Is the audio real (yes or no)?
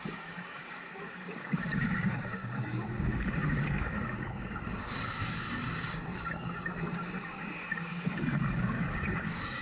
no